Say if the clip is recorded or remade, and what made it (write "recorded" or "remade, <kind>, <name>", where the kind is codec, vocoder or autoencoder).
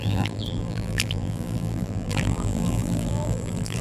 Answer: remade, vocoder, BigVGAN v2